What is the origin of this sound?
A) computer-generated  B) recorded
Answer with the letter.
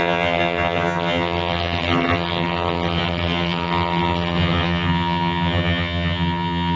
A